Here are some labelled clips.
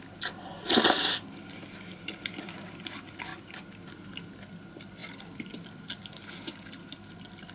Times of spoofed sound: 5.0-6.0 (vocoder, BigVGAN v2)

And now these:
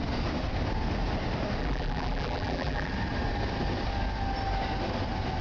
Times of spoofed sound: 1.6-2.9 (vocoder, BigVGAN v2)

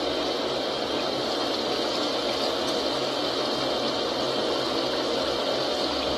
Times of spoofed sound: none

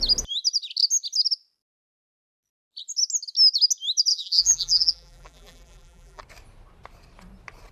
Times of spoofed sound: 4.1-6.2 (vocoder, BigVGAN v2)